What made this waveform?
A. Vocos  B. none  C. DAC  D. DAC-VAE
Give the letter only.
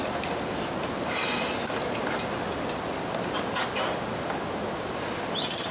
B